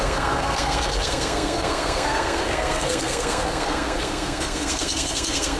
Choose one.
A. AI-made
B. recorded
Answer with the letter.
A